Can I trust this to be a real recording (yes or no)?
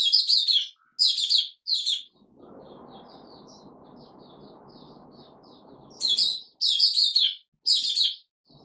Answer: yes